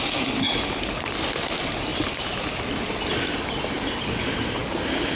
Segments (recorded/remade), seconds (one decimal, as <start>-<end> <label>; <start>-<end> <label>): 0.0-5.2 recorded